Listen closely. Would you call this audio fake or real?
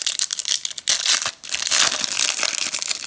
real